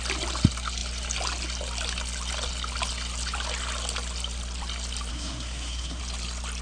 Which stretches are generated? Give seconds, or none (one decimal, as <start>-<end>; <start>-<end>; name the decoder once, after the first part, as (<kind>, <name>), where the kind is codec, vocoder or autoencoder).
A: 5.1-6.0 (codec, SNAC)